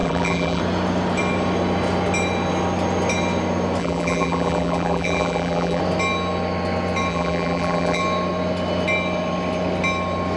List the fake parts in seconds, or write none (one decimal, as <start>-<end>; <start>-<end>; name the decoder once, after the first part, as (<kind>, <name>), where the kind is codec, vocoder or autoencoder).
0.0-0.6 (vocoder, BigVGAN v2); 3.8-5.8; 7.1-8.0